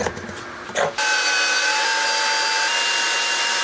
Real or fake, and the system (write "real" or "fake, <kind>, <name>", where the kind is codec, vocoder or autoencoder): real